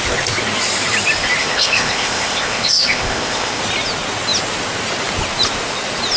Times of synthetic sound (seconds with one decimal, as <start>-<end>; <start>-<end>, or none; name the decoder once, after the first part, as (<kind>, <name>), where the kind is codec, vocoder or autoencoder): 1.4-3.6 (codec, ZipCodec)